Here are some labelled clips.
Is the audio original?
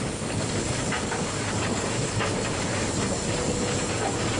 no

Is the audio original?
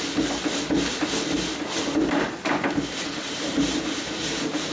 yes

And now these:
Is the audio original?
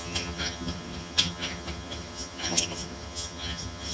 no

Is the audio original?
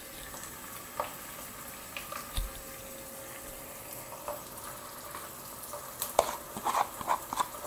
yes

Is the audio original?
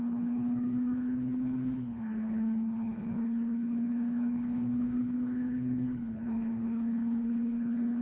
no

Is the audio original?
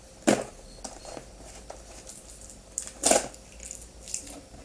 yes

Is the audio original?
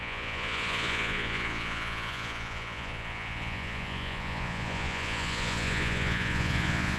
no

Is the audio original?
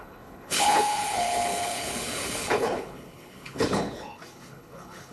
no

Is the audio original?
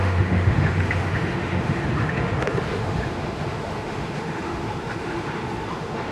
no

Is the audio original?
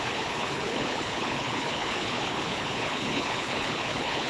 no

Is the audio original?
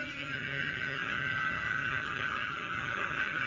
no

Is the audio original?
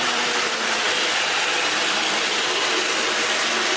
no